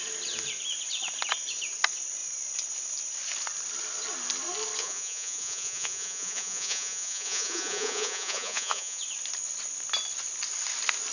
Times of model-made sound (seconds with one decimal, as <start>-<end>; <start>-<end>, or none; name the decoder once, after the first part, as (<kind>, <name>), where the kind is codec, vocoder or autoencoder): 4.8-9.0 (vocoder, Vocos)